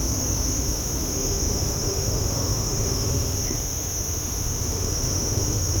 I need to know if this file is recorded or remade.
remade